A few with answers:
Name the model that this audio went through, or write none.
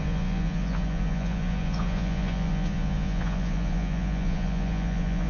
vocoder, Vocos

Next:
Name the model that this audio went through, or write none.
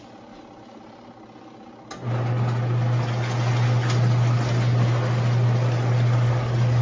none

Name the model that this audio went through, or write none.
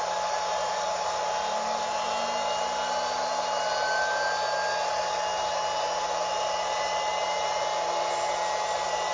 none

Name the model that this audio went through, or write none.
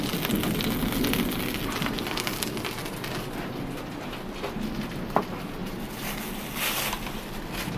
none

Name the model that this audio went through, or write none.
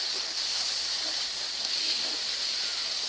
none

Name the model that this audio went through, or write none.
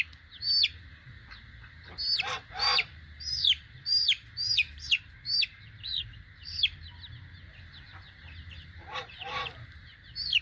vocoder, BigVGAN v2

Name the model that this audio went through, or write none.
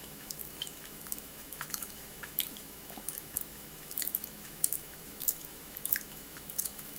autoencoder, DAC-VAE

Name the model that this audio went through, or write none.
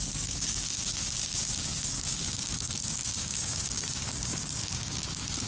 codec, DAC